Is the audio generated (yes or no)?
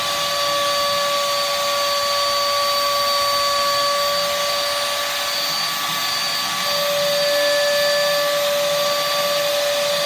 no